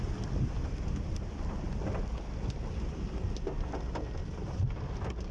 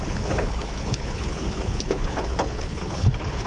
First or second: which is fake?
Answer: second